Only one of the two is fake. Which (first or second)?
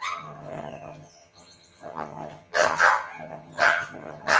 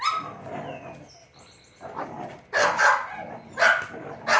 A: first